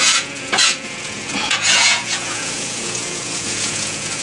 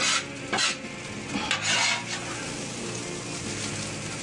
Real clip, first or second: second